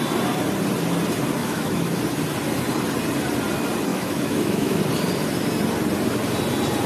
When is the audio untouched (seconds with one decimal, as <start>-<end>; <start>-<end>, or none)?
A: 0.0-1.4; 2.0-3.9; 4.8-6.9